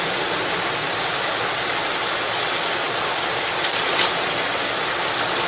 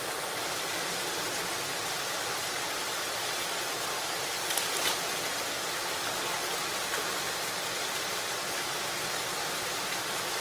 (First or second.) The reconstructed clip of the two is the second